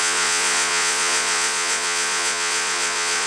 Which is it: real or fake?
fake